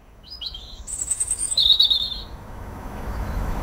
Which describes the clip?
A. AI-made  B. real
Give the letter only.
A